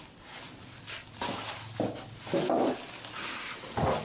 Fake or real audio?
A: real